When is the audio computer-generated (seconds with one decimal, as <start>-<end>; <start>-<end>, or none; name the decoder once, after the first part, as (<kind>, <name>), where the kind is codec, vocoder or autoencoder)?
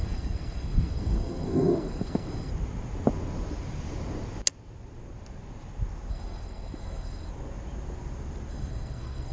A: 0.0-2.5 (codec, SNAC); 6.1-7.3; 8.5-9.3